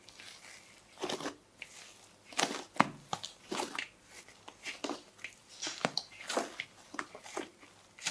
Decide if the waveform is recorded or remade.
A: recorded